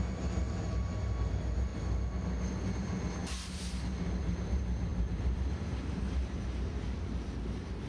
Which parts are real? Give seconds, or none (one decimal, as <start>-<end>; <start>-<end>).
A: 1.7-2.5